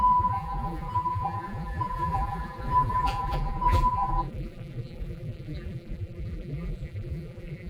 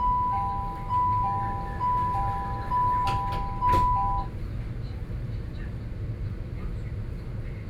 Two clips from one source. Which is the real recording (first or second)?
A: second